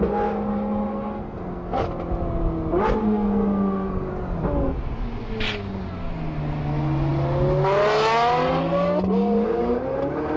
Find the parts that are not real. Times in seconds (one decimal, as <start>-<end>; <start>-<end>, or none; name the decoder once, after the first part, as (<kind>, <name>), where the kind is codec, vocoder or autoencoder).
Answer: 0.9-1.8 (codec, SNAC); 3.0-4.1